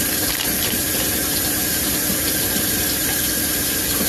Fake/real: real